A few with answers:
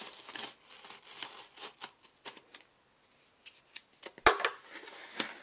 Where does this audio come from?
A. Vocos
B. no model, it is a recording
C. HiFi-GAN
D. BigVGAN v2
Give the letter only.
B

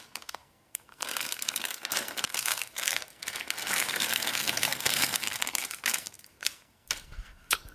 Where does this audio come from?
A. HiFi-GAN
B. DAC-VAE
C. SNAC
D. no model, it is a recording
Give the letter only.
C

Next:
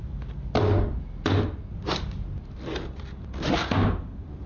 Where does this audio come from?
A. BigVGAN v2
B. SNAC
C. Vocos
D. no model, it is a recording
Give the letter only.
D